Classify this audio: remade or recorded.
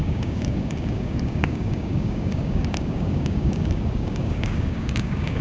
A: remade